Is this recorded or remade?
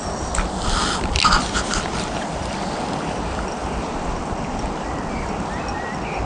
recorded